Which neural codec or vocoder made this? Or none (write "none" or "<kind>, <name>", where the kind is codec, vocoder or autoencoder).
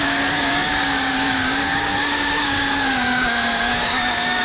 codec, DAC